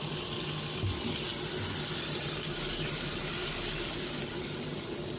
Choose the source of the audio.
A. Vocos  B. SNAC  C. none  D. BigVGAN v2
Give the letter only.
C